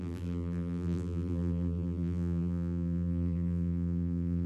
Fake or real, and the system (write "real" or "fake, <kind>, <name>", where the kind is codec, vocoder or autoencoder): fake, vocoder, BigVGAN v2